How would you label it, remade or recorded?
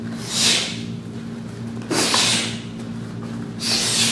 recorded